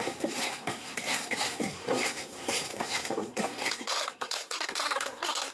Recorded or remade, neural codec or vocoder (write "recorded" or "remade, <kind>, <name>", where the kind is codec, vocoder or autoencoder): remade, codec, SNAC